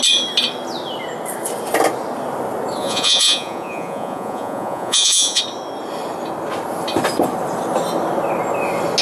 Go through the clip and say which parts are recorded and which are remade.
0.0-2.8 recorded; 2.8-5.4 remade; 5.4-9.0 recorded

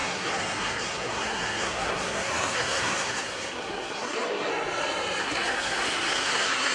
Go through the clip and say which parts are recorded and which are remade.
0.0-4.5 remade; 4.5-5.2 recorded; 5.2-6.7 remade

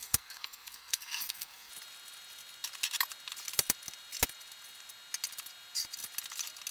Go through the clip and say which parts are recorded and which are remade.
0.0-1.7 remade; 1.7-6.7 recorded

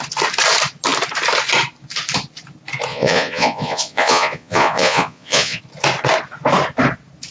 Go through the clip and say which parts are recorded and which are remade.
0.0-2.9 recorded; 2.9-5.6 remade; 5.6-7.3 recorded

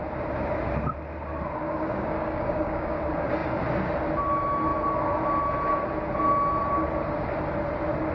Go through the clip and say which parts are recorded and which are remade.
0.0-1.6 recorded; 1.6-3.0 remade; 3.0-8.1 recorded

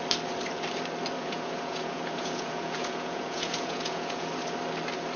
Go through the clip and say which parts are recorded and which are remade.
0.0-1.2 recorded; 1.2-4.3 remade; 4.3-5.2 recorded

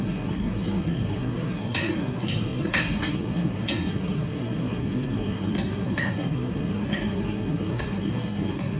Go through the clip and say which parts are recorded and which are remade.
0.0-8.8 remade

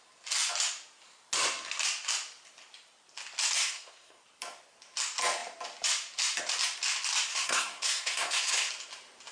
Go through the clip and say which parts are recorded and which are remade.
0.0-3.6 recorded; 3.6-4.2 remade; 4.2-7.3 recorded; 7.3-8.7 remade; 8.7-9.3 recorded